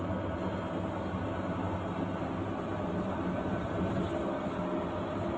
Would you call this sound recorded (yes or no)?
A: yes